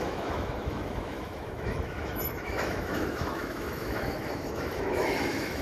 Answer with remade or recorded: remade